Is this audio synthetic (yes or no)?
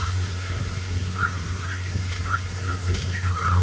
yes